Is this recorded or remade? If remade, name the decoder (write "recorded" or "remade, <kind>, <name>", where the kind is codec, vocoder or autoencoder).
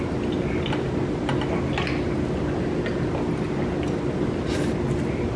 recorded